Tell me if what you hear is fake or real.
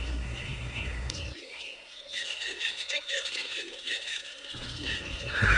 fake